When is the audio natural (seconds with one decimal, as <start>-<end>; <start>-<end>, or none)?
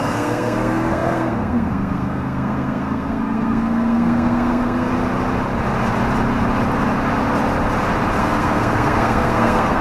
4.9-8.2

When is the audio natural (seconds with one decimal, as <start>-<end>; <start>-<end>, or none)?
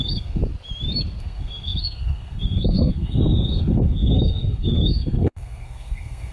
0.4-1.2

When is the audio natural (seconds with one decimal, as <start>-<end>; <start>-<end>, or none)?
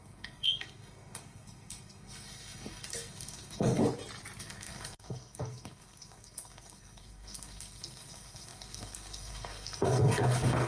3.8-4.4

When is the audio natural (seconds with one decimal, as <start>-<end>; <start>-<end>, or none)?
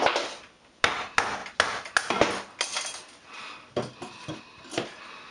0.0-5.3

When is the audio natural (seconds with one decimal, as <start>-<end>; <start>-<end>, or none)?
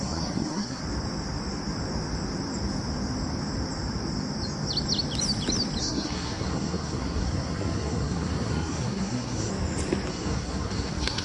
0.8-5.8; 9.5-10.1